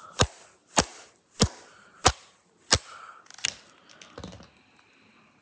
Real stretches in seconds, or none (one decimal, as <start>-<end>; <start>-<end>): 0.0-5.4